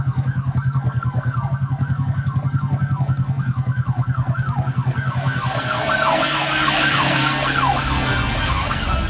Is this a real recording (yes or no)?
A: no